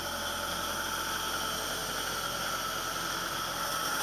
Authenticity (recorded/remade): recorded